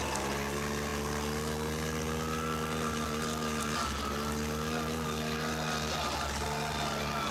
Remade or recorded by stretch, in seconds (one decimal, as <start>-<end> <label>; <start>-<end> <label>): 0.0-7.3 recorded